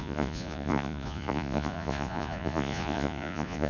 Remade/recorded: remade